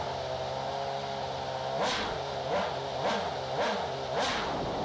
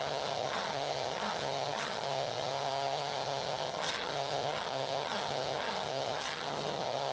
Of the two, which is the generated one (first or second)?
second